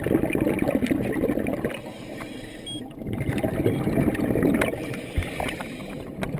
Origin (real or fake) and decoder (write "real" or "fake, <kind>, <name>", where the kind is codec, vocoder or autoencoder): real